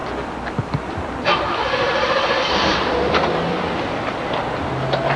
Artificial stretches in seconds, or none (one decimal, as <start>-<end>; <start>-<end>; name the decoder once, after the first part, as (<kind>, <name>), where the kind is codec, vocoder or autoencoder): 0.0-3.1 (vocoder, BigVGAN v2); 3.5-4.6